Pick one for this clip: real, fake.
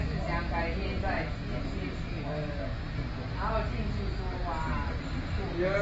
real